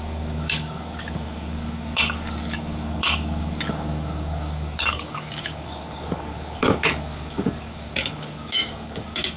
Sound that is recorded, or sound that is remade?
remade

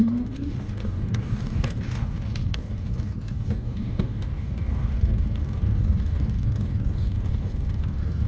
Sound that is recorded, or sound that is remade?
remade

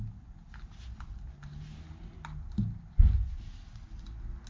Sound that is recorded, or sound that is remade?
recorded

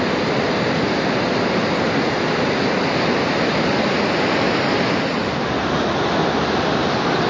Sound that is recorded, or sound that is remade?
recorded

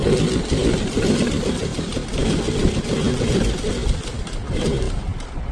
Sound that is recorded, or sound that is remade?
recorded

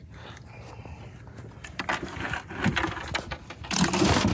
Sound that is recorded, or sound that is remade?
recorded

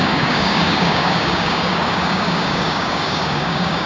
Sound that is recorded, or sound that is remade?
remade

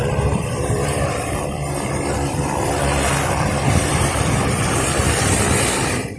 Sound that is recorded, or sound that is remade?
remade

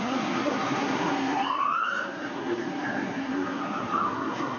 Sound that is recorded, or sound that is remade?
remade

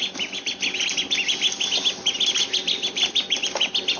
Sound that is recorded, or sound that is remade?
recorded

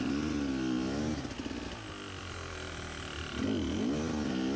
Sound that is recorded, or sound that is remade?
recorded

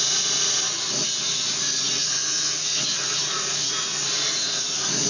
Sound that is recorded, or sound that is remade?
remade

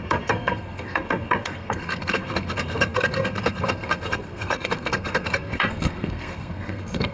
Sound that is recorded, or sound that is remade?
remade